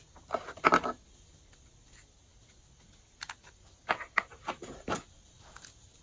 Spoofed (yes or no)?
no